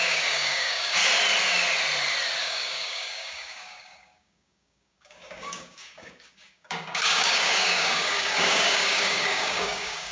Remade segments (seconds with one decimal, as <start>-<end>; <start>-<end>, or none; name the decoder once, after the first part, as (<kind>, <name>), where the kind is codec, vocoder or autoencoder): 0.0-1.0 (codec, DAC); 2.4-10.1